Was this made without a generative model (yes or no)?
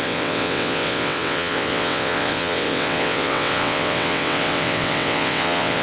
no